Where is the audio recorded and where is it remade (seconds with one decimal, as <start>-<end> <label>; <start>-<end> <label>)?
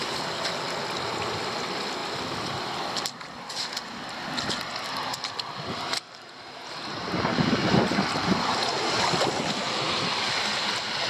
0.0-11.1 recorded